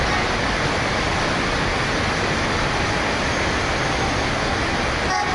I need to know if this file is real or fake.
real